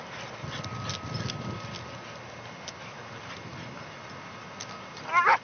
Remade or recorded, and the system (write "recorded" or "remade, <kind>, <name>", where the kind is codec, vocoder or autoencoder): recorded